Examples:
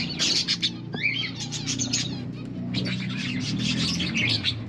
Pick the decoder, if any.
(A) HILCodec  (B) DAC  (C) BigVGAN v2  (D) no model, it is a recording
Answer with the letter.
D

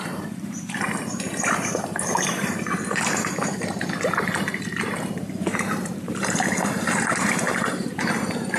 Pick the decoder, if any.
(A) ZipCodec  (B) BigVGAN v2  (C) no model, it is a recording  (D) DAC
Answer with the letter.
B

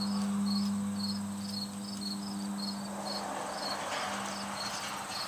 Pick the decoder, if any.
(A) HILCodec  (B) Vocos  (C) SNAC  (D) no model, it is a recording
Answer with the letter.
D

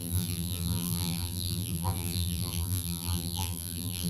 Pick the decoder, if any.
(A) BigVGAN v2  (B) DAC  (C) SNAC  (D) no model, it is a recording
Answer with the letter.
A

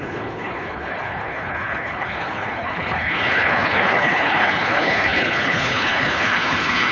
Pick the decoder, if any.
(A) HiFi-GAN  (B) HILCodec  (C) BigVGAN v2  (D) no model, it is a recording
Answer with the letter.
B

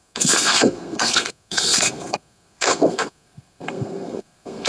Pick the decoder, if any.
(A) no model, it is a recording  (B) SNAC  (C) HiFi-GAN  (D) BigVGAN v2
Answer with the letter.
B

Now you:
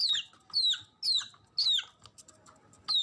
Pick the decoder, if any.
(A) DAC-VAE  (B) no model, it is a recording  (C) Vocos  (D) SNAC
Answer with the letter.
B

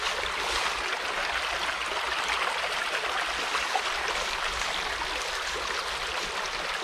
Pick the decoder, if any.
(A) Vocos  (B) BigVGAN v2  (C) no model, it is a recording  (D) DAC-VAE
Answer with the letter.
C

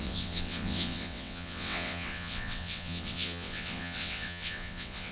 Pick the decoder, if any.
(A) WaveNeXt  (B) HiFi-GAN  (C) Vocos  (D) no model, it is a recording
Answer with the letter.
A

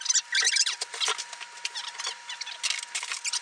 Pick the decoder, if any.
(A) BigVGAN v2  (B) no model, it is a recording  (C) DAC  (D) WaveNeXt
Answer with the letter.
B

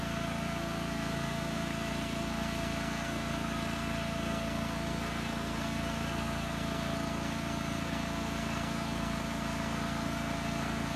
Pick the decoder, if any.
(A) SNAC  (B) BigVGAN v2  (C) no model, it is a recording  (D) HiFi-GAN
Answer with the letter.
A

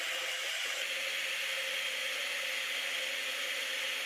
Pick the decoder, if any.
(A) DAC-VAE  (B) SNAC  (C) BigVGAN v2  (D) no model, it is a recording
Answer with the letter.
D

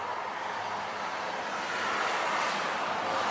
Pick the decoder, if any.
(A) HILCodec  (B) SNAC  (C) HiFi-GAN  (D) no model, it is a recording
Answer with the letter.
D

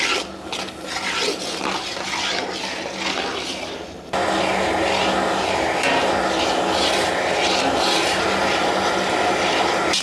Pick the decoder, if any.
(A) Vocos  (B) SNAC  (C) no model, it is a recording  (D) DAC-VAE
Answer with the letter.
C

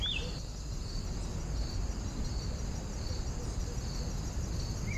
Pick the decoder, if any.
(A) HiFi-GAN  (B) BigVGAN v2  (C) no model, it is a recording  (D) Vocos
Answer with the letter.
B